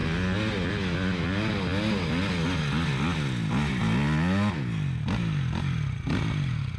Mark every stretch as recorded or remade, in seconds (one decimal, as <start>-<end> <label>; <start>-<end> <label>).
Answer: 0.0-6.8 recorded